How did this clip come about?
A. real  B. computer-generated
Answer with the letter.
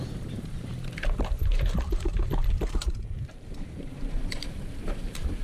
B